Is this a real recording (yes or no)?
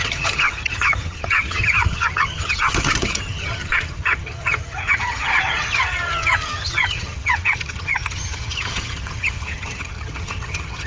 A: no